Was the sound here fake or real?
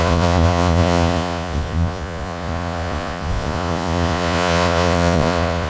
fake